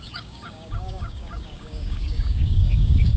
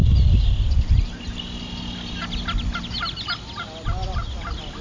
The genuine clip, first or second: second